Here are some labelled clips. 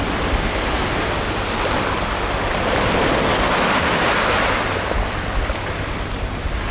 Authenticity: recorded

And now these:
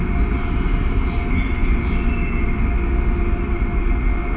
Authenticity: recorded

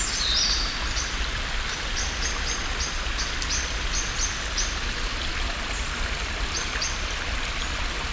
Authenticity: recorded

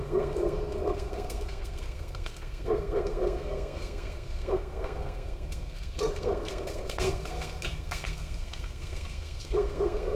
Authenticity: remade